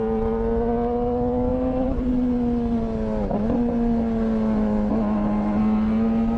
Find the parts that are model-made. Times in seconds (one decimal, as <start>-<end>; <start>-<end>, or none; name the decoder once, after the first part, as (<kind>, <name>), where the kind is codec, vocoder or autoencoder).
1.5-2.1 (vocoder, BigVGAN v2)